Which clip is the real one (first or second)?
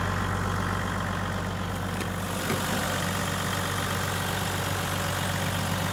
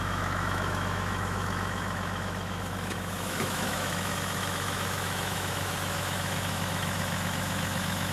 first